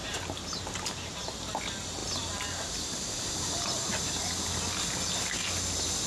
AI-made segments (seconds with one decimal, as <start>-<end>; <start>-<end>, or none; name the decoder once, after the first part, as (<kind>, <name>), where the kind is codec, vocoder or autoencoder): 0.0-1.4 (vocoder, BigVGAN v2); 2.0-4.1